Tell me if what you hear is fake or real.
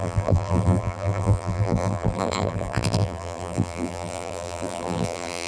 fake